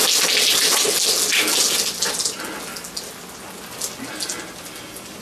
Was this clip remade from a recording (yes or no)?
no